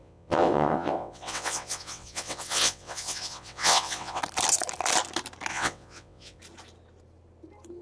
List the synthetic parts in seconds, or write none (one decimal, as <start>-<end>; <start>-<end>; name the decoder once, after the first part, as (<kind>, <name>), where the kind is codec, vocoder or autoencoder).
0.0-4.2 (vocoder, WaveNeXt); 5.5-6.4